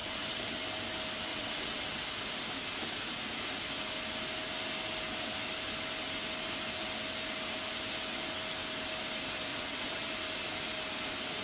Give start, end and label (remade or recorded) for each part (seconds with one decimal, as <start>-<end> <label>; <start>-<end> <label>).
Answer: 0.0-0.6 remade; 0.6-1.3 recorded; 1.3-2.0 remade; 2.0-9.5 recorded; 9.5-10.1 remade; 10.1-11.4 recorded